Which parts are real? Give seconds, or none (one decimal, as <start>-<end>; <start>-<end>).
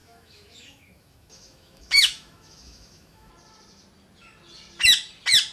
3.3-5.5